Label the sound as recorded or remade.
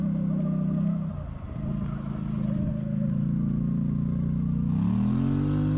recorded